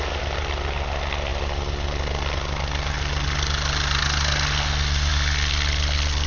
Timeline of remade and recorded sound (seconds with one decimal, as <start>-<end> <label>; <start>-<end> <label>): 0.0-6.3 recorded